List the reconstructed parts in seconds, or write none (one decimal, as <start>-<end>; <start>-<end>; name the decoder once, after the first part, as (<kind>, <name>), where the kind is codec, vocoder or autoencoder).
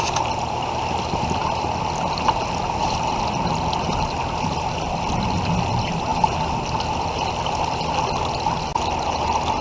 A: none